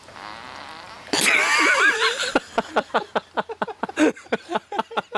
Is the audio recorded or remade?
recorded